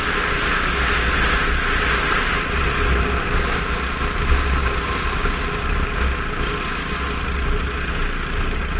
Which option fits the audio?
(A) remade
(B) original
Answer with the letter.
B